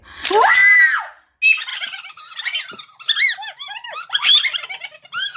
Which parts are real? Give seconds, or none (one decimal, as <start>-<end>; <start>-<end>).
0.0-1.7; 2.4-5.4